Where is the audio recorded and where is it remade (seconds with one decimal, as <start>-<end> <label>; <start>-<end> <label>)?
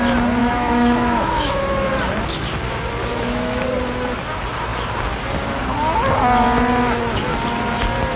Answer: 0.0-0.4 recorded; 0.4-1.6 remade; 1.6-3.1 recorded; 3.1-3.6 remade; 3.6-8.2 recorded